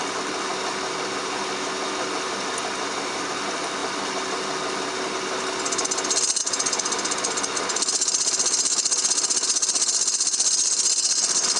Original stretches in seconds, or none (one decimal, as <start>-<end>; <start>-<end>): 0.0-11.6